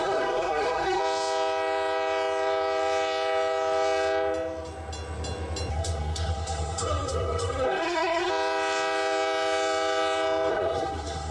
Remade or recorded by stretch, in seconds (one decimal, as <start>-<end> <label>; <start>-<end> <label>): 0.0-1.0 remade; 1.0-5.7 recorded; 5.7-8.3 remade; 8.3-10.5 recorded; 10.5-11.3 remade